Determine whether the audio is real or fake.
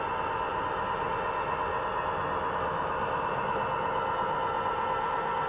real